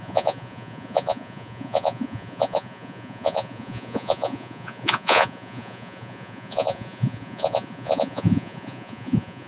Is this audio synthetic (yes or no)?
yes